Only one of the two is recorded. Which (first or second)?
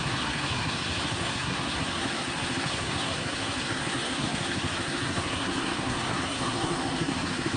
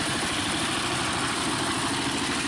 second